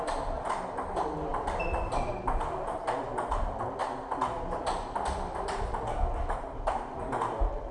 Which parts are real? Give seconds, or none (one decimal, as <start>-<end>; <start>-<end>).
0.0-1.3; 2.1-7.7